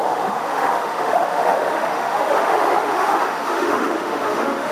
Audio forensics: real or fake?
fake